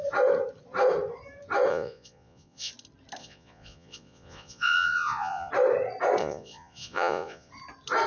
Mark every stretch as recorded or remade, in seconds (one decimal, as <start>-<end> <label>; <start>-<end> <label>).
0.0-1.7 recorded; 1.7-2.7 remade; 2.7-3.2 recorded; 3.2-5.5 remade; 5.5-6.2 recorded; 6.2-7.5 remade; 7.5-8.1 recorded